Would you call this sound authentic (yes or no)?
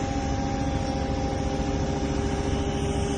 yes